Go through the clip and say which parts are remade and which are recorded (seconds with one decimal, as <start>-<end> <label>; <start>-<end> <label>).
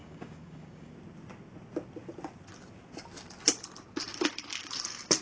0.0-0.9 remade; 0.9-5.2 recorded